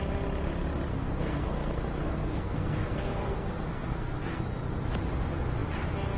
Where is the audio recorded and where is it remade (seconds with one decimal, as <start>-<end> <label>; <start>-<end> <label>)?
0.0-0.9 recorded; 0.9-4.4 remade; 4.4-6.2 recorded